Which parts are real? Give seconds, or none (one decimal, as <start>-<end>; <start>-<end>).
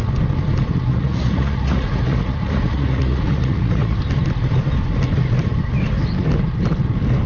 0.0-0.9; 4.0-7.3